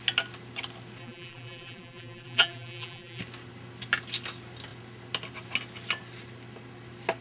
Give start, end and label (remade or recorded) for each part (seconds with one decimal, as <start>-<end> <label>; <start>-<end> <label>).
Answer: 0.0-1.0 recorded; 1.0-3.2 remade; 3.2-7.2 recorded